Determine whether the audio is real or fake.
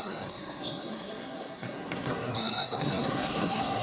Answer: fake